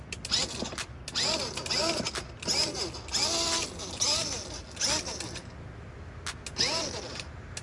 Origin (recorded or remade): recorded